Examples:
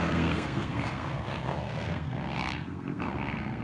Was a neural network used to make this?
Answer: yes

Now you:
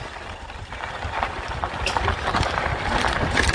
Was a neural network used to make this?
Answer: no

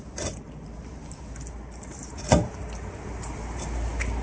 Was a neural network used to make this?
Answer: no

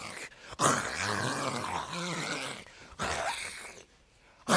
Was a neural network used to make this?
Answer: no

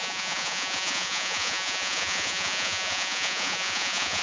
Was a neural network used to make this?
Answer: yes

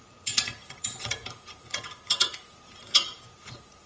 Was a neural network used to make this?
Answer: yes